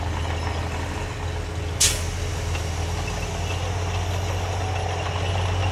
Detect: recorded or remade recorded